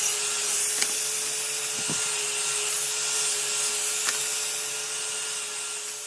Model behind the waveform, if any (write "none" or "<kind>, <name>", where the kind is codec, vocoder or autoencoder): none